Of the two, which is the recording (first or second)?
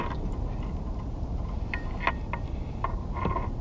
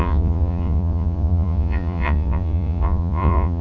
first